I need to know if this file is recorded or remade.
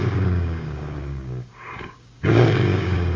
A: remade